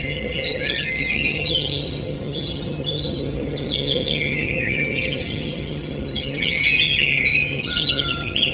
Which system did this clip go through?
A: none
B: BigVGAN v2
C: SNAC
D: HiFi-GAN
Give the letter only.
D